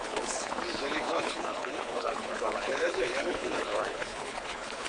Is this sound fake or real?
fake